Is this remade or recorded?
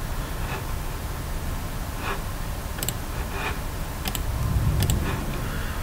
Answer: recorded